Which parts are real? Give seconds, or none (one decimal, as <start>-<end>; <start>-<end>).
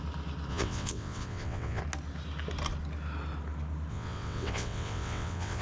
0.0-0.5; 1.8-3.9